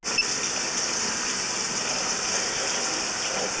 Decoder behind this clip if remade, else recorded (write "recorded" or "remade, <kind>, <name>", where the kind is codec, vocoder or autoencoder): recorded